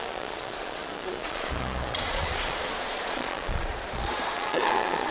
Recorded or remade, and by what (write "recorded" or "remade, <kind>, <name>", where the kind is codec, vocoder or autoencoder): remade, vocoder, Vocos